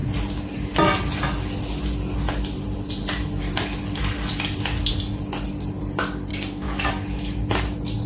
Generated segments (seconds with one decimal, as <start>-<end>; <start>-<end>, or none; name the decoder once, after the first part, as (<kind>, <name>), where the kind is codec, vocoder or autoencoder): 6.3-6.9 (codec, DAC)